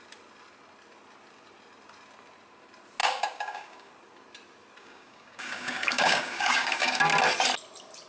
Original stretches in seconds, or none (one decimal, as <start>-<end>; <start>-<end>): 0.0-3.0; 3.9-4.8; 7.0-8.1